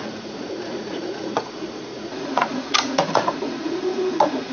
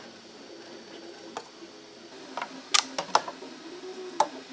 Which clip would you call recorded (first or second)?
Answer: second